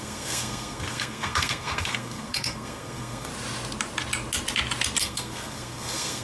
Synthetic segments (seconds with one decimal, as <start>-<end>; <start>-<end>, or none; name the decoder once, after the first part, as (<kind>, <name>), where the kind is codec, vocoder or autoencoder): 0.0-3.3 (codec, SNAC); 5.0-6.2